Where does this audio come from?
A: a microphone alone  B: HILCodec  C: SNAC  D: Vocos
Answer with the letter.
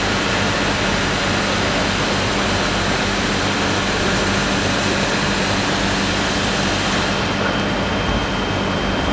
A